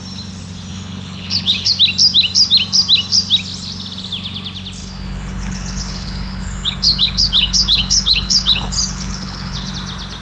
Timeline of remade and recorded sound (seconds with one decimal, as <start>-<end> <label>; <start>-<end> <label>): 0.0-0.7 recorded; 0.7-1.7 remade; 1.7-4.8 recorded; 4.8-9.7 remade; 9.7-10.2 recorded